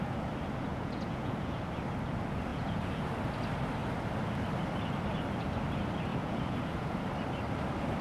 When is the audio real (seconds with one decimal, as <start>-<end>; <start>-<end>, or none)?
0.0-0.7; 1.6-2.5; 3.0-6.1; 7.0-8.0